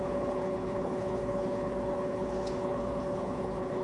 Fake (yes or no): yes